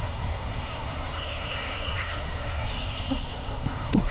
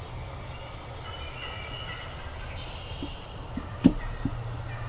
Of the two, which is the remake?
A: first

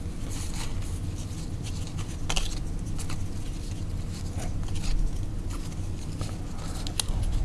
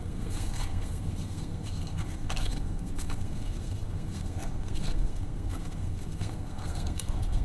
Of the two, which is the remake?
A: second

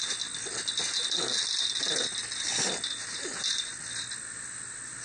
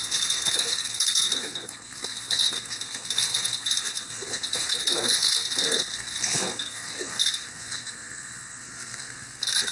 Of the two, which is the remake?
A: second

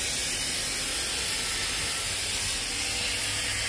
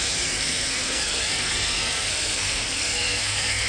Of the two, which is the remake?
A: second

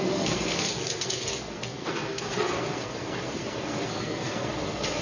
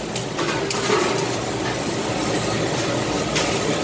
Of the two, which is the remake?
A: first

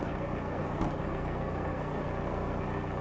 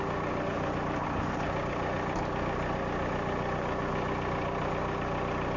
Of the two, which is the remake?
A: first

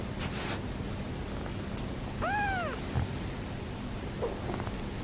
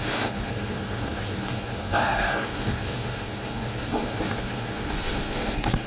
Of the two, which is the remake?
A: second